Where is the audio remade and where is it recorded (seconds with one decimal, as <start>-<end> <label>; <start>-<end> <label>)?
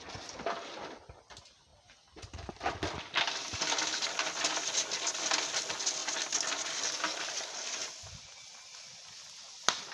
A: 0.0-9.9 recorded